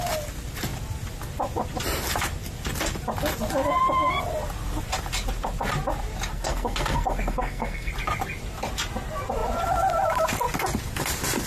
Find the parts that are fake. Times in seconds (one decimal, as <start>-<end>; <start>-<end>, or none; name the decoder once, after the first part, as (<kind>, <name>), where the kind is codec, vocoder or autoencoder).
6.3-7.9 (codec, SNAC)